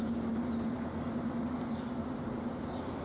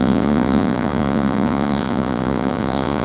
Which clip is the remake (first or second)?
second